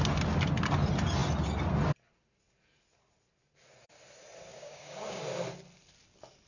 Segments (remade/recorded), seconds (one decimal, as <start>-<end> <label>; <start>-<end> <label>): 0.0-4.5 recorded; 4.5-5.2 remade; 5.2-6.5 recorded